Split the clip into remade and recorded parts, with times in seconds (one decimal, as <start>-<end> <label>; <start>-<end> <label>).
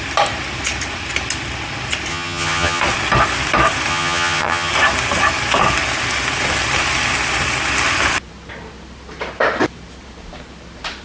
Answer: 0.0-2.1 recorded; 2.1-2.8 remade; 2.8-3.9 recorded; 3.9-4.7 remade; 4.7-11.0 recorded